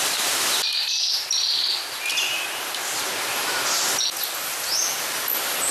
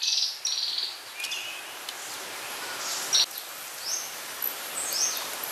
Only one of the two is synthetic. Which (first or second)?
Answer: first